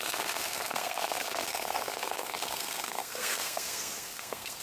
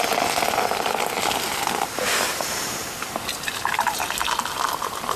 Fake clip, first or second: first